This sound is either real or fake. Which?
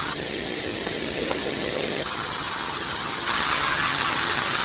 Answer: fake